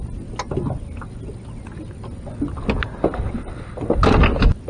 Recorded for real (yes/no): yes